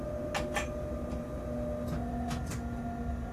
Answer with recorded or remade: recorded